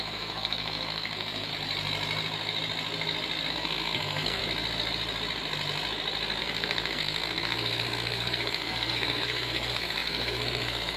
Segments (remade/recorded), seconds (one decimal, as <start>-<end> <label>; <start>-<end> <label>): 0.0-1.5 remade; 1.5-3.5 recorded; 3.5-4.4 remade; 4.4-6.4 recorded; 6.4-11.0 remade